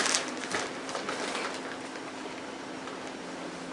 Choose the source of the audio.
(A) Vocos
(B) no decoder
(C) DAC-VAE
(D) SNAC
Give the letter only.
B